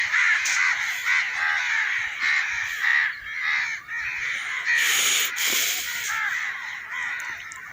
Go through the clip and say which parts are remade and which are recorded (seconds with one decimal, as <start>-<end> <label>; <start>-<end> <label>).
0.0-7.7 recorded